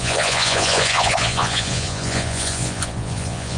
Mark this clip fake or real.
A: fake